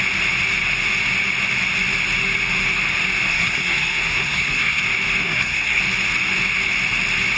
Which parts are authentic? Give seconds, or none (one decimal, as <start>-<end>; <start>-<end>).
0.0-3.3; 4.8-5.2; 5.8-7.4